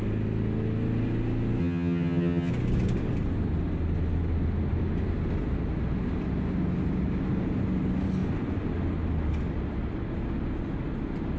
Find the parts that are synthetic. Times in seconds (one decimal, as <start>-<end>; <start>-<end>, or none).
1.6-2.5